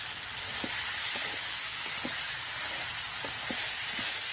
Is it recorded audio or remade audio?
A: recorded